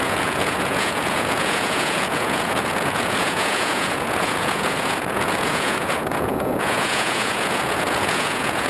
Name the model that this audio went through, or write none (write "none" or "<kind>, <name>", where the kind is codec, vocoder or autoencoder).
vocoder, Vocos